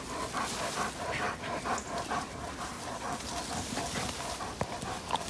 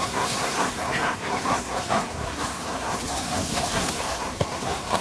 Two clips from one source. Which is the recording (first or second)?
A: first